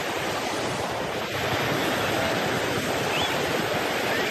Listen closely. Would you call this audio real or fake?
real